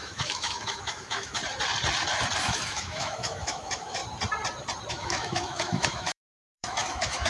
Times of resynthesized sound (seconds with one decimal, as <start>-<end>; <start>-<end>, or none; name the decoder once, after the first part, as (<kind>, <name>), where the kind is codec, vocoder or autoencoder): 0.0-1.4 (autoencoder, DAC-VAE); 2.4-4.0; 4.9-7.3